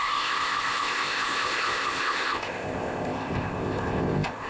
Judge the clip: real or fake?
fake